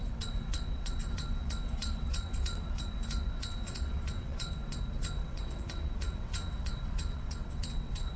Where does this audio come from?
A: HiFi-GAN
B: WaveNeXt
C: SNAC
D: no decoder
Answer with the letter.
B